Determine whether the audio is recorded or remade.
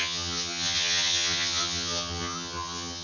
remade